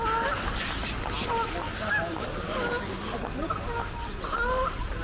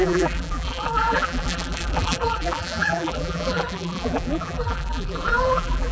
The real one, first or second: first